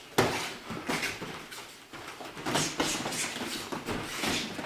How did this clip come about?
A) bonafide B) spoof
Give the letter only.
A